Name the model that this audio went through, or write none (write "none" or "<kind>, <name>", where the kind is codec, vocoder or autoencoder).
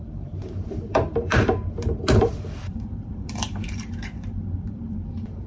vocoder, BigVGAN v2